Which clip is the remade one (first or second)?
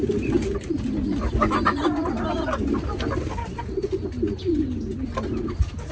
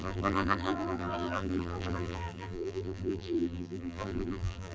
second